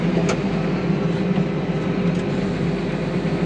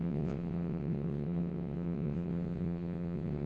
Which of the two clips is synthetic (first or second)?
second